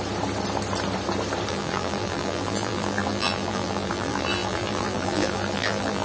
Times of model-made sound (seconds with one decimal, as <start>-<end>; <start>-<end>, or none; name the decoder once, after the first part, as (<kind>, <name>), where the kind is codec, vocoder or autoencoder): 1.5-6.0 (vocoder, BigVGAN v2)